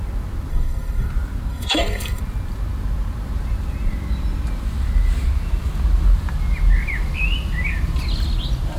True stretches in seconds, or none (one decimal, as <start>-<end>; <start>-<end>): 0.0-0.5; 1.1-1.5; 2.2-8.8